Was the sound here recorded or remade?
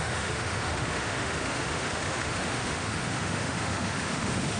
remade